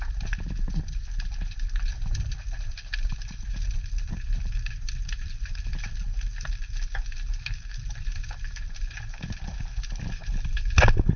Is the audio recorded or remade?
recorded